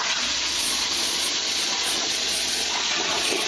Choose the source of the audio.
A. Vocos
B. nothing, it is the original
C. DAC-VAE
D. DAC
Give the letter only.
A